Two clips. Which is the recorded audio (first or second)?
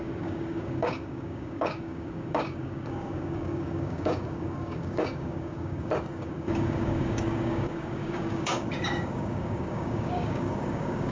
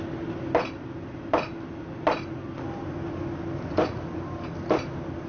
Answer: second